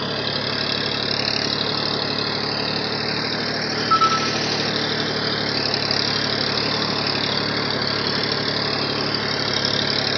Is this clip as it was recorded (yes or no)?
yes